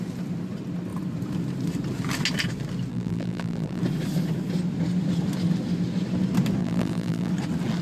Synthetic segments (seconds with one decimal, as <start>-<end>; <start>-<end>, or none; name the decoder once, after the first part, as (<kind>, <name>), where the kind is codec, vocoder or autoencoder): 2.9-3.8 (vocoder, BigVGAN v2); 6.6-7.3